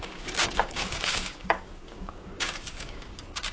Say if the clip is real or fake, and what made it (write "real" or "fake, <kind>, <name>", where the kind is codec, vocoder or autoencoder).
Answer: fake, codec, DAC